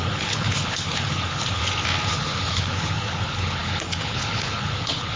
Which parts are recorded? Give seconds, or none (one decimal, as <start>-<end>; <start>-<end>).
1.6-2.1